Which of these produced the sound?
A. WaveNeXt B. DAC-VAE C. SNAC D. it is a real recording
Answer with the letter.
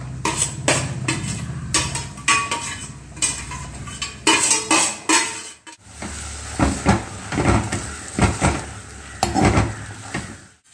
D